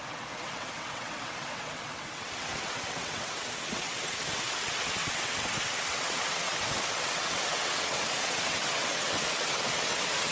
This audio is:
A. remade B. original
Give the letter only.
A